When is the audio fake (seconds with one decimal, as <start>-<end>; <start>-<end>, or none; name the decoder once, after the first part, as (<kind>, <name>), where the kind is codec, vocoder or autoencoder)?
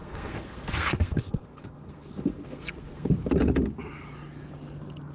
0.0-3.1 (codec, SNAC)